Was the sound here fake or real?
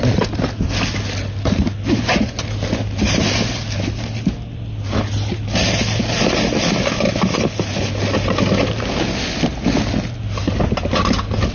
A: real